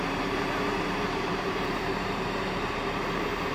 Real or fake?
fake